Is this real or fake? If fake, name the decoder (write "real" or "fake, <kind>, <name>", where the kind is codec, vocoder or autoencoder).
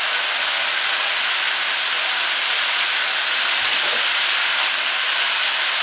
real